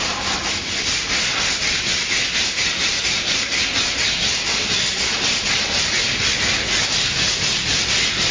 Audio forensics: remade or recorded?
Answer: recorded